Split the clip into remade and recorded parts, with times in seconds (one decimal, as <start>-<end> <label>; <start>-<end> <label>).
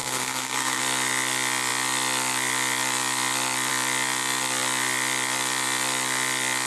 0.0-0.8 remade; 0.8-6.7 recorded